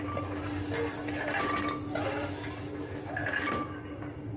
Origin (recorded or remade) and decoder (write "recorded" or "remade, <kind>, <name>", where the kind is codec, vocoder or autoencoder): recorded